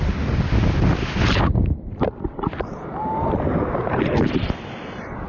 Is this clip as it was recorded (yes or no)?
yes